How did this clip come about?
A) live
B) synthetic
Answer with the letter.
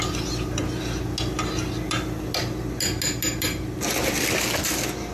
A